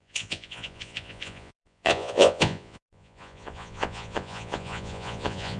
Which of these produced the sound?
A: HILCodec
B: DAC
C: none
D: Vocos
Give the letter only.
D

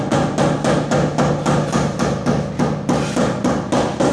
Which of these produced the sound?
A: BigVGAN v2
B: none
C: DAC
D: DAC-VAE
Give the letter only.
B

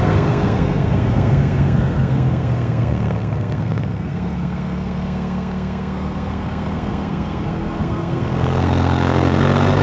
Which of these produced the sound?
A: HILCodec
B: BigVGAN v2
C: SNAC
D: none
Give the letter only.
C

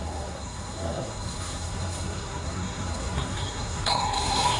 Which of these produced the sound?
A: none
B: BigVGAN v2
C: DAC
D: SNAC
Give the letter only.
D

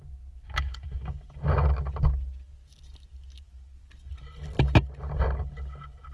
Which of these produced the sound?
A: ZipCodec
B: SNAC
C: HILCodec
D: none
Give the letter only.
D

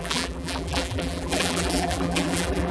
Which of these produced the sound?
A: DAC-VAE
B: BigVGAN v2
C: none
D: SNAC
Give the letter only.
B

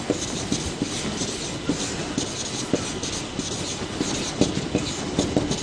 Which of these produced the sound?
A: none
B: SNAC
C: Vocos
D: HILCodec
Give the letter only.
A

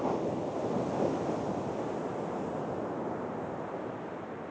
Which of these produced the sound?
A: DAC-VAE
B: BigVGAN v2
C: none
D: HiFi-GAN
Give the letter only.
C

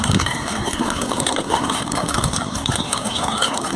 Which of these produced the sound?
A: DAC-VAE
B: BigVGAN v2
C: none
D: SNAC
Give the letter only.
D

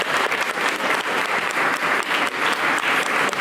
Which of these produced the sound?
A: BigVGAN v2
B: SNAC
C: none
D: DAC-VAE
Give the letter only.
A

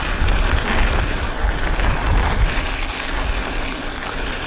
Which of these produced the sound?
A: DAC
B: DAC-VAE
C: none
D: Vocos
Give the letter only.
C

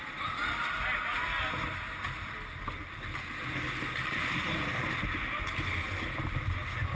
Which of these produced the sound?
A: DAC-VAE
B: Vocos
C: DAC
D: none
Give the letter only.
D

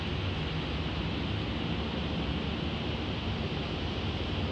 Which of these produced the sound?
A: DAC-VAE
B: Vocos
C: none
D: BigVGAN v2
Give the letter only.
C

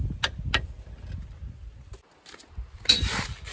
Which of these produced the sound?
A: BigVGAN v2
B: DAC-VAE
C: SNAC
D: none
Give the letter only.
D